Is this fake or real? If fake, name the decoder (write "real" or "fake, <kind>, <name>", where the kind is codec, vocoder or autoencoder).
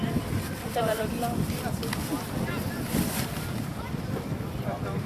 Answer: real